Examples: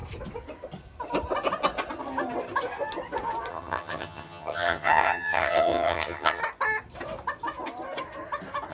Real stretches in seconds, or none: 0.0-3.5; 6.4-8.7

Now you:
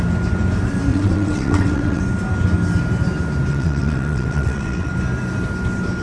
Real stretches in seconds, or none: 0.0-0.9; 2.0-3.5; 4.9-6.0

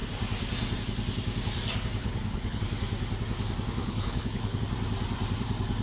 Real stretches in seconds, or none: 0.0-2.0; 2.6-3.8; 4.6-5.8

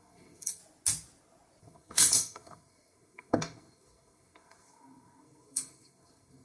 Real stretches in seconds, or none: 0.6-1.6